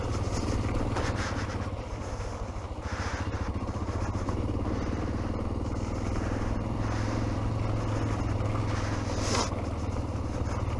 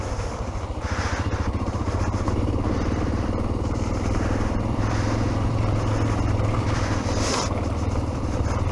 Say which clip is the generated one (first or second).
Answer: second